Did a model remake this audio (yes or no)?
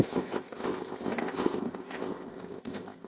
yes